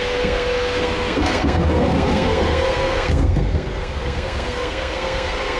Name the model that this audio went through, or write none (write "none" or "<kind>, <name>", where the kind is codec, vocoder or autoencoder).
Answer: codec, SNAC